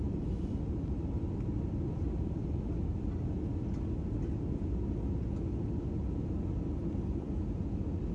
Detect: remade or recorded recorded